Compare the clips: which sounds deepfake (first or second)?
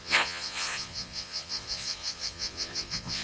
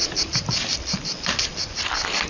first